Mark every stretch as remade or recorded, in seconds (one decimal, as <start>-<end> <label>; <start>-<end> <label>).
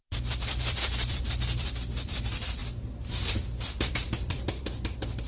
0.0-2.6 remade; 2.6-3.9 recorded; 3.9-5.3 remade